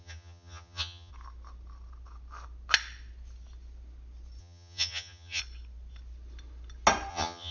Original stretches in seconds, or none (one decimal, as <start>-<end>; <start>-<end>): 1.1-4.4; 5.4-7.1